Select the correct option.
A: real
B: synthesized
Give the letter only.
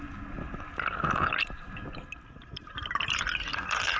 A